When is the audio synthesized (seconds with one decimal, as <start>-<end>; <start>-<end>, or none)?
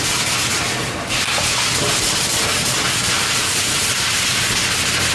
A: none